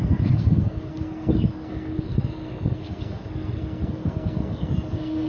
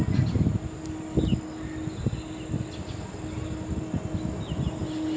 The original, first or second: second